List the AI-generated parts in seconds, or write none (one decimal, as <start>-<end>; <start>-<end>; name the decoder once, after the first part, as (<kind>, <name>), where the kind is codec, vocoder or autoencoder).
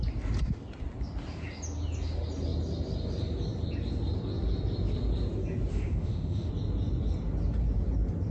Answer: 5.7-6.5 (autoencoder, DAC-VAE)